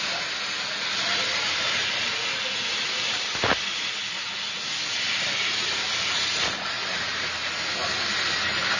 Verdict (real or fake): real